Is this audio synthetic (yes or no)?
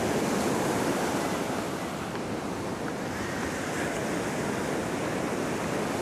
no